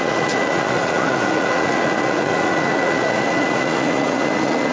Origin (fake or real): fake